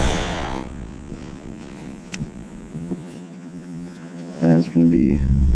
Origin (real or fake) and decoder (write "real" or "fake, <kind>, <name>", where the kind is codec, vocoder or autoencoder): fake, vocoder, Vocos